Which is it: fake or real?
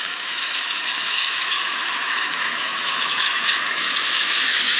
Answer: fake